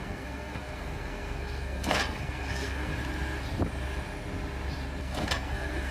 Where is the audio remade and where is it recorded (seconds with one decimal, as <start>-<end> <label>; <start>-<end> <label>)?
0.0-2.9 remade; 2.9-5.0 recorded; 5.0-5.9 remade